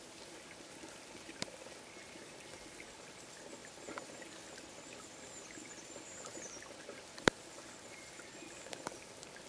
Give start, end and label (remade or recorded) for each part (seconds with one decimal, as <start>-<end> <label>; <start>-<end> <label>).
0.0-9.5 recorded